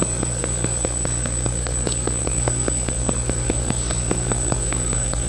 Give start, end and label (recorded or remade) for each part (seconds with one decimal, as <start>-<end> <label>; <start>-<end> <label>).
0.0-5.3 remade